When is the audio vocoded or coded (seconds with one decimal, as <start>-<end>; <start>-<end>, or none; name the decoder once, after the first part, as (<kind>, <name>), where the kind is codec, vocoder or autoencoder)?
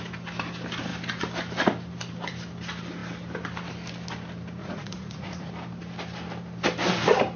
4.6-5.5 (vocoder, Vocos)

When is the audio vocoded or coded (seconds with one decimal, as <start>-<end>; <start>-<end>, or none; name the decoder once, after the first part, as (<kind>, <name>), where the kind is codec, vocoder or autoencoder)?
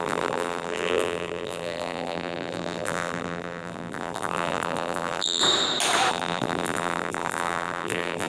0.0-5.4 (vocoder, BigVGAN v2); 6.1-8.3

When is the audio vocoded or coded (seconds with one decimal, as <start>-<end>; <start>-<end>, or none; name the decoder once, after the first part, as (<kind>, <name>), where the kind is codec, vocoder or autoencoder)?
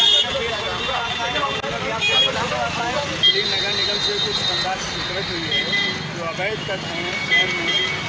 none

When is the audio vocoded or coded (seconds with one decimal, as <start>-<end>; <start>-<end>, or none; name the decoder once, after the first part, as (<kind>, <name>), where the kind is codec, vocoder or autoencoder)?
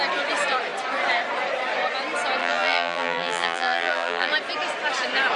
2.4-4.3 (vocoder, BigVGAN v2)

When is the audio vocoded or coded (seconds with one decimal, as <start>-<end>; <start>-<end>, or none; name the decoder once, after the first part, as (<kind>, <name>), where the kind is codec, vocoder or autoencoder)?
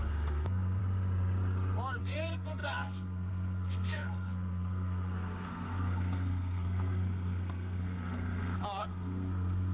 0.0-0.8 (codec, SNAC); 2.0-9.7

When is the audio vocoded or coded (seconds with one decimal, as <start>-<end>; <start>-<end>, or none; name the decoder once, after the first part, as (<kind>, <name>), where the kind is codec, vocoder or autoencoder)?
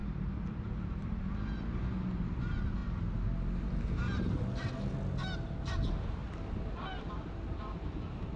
none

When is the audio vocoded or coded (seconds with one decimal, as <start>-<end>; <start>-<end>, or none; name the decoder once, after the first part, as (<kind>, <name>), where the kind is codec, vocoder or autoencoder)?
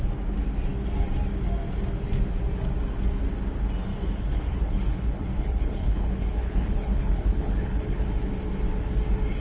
3.9-8.1 (codec, HILCodec)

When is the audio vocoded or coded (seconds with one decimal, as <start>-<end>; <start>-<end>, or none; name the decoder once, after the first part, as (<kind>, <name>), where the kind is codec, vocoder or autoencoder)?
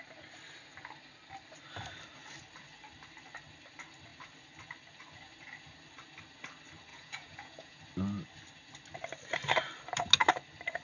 6.9-7.8 (vocoder, Vocos)